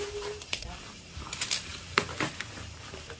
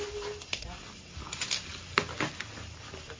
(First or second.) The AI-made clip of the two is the first